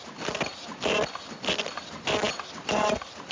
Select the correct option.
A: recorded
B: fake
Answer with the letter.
A